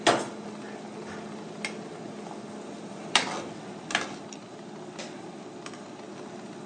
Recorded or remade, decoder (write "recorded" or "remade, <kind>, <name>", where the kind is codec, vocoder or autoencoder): recorded